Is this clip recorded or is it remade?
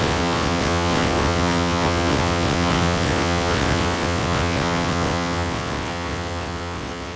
remade